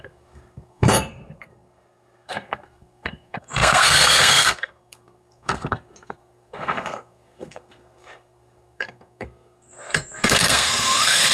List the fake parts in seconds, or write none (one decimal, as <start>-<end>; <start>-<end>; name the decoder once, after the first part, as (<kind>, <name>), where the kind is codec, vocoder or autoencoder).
0.0-11.3 (codec, SNAC)